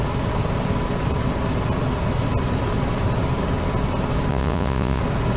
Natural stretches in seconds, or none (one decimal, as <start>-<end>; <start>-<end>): 0.0-4.3; 5.0-5.4